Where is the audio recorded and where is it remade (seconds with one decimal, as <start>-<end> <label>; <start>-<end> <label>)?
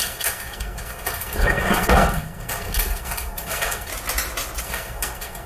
0.0-3.9 remade; 3.9-4.6 recorded; 4.6-5.5 remade